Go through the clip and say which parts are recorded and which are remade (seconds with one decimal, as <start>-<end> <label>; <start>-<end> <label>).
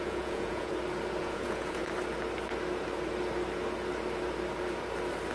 0.0-0.7 remade; 0.7-1.2 recorded; 1.2-1.8 remade; 1.8-5.3 recorded